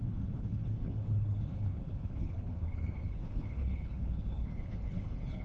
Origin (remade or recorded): remade